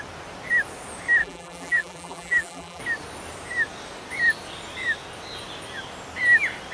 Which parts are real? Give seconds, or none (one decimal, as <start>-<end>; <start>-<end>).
0.0-1.2; 2.8-6.7